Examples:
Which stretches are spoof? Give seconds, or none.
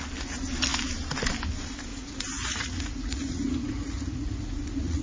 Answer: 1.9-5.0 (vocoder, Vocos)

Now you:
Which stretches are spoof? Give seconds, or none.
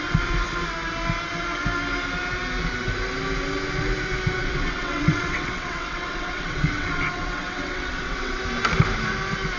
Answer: 4.4-8.4 (vocoder, WaveNeXt)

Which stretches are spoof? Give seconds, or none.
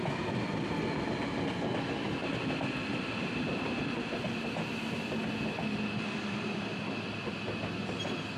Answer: none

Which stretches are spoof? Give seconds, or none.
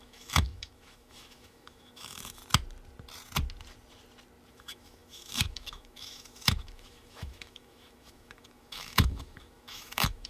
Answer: 0.0-2.4 (autoencoder, DAC-VAE); 4.5-10.3